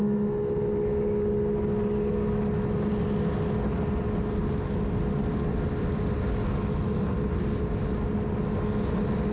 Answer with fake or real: real